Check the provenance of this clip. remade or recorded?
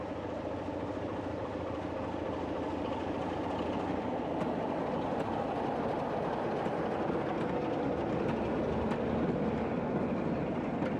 recorded